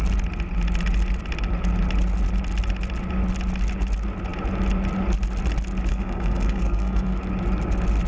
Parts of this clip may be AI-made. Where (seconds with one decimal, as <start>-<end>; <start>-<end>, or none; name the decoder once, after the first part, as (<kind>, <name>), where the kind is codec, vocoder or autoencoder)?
5.9-7.2 (codec, SNAC)